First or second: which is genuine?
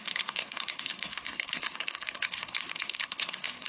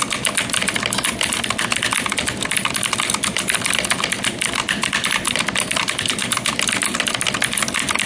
second